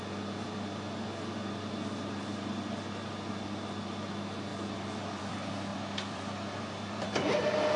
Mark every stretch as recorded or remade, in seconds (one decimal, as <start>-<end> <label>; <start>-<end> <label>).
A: 0.0-2.3 recorded; 2.3-3.3 remade; 3.3-4.5 recorded; 4.5-5.2 remade; 5.2-5.7 recorded; 5.7-7.1 remade; 7.1-7.8 recorded